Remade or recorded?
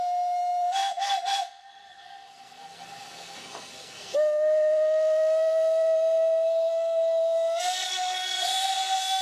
remade